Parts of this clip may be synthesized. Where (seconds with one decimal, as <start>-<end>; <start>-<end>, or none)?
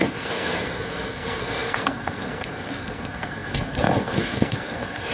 0.0-5.1